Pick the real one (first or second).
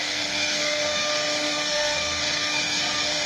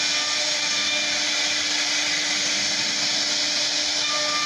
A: second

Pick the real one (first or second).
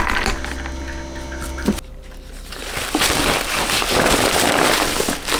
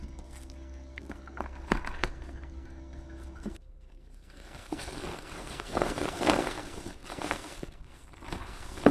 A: first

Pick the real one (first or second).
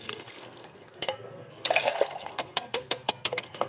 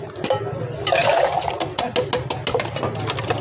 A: second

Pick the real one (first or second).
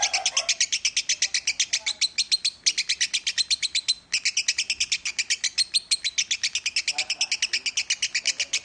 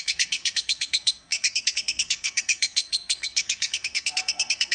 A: first